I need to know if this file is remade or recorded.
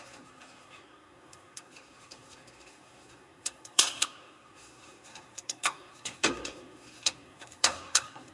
remade